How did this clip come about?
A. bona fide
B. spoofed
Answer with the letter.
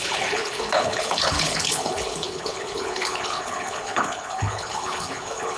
B